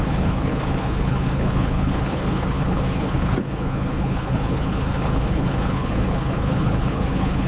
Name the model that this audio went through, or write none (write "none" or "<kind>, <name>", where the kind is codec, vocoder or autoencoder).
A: codec, HILCodec